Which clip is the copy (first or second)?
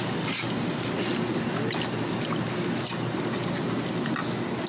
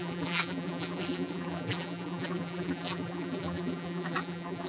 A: second